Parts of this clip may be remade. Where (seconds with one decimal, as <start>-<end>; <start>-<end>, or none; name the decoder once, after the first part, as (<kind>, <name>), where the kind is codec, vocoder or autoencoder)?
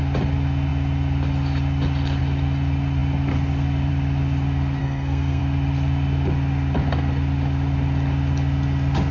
4.8-5.4 (codec, SNAC)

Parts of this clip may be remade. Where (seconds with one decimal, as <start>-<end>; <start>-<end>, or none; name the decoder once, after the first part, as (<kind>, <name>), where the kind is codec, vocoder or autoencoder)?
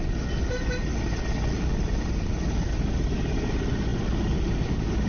1.7-2.3 (vocoder, BigVGAN v2); 3.9-5.1